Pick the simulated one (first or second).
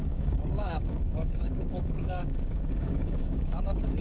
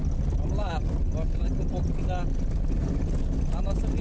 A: first